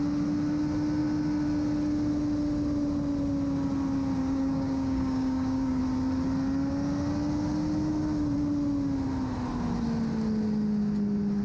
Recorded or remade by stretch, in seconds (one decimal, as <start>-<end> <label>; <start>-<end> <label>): 0.0-4.2 recorded; 4.2-5.8 remade; 5.8-11.4 recorded